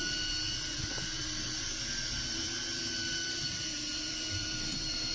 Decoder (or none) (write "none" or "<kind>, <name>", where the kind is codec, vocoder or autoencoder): vocoder, BigVGAN v2